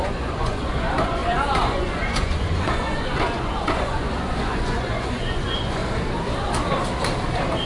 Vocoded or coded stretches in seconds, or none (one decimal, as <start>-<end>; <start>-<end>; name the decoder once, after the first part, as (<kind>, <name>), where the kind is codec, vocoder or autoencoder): 0.0-5.8 (vocoder, Vocos)